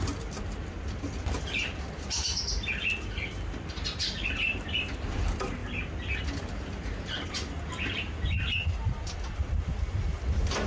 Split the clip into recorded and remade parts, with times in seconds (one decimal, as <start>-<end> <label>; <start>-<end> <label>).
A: 0.0-10.7 recorded